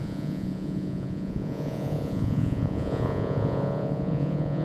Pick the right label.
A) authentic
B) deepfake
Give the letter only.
B